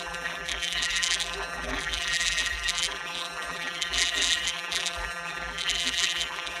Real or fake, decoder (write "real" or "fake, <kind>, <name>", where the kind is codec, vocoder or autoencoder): fake, vocoder, BigVGAN v2